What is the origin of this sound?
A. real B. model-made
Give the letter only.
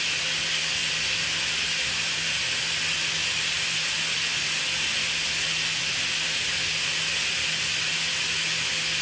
A